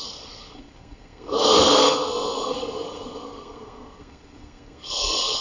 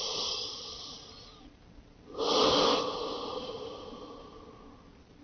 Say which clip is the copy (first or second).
first